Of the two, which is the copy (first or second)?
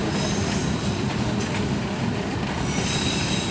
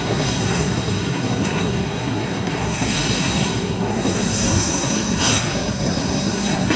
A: second